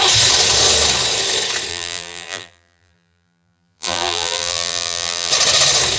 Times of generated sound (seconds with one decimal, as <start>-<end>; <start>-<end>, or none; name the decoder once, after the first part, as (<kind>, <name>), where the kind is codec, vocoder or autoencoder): 1.7-5.3 (vocoder, BigVGAN v2)